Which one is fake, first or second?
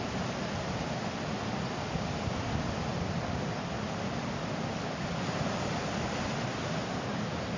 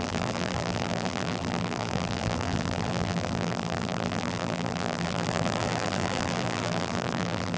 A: second